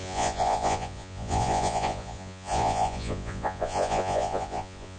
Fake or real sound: fake